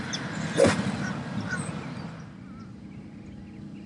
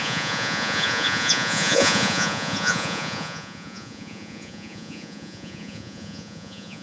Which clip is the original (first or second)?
first